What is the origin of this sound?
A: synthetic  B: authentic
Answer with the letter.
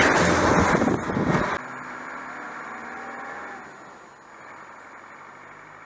B